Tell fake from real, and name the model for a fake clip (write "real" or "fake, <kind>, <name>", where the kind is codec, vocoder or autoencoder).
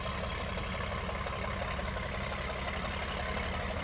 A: real